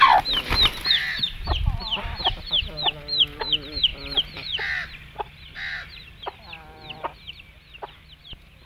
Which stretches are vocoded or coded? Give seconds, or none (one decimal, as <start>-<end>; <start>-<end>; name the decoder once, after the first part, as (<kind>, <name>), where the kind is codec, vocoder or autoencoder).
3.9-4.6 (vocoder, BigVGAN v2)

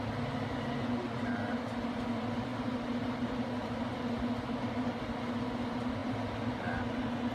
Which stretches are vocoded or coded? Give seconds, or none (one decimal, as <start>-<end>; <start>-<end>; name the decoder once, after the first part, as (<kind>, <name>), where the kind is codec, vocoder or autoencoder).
none

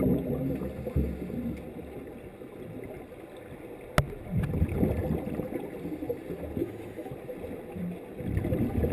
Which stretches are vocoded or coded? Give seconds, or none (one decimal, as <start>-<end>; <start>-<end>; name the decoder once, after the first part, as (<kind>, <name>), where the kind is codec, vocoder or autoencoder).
6.6-7.1 (autoencoder, DAC-VAE)

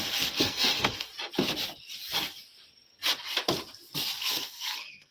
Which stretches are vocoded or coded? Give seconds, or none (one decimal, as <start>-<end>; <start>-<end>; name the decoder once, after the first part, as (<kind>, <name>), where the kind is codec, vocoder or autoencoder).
0.0-1.1 (codec, SNAC); 4.2-5.1